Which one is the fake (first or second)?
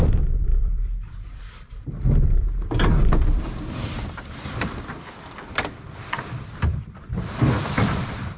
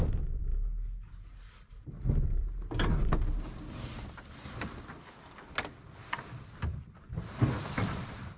first